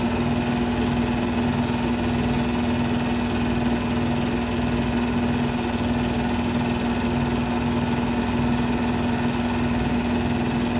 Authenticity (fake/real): real